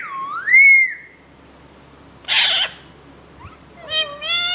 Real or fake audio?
real